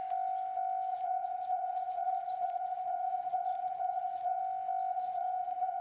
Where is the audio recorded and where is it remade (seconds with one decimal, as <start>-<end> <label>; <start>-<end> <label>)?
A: 0.0-0.9 recorded; 0.9-4.4 remade; 4.4-4.9 recorded; 4.9-5.8 remade